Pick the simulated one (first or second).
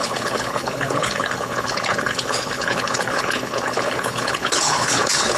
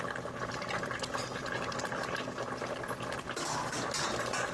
first